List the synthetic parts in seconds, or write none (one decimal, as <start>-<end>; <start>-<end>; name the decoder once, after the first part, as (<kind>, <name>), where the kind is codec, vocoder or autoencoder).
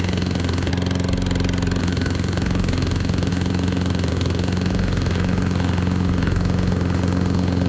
0.0-0.7 (autoencoder, DAC-VAE); 1.8-7.7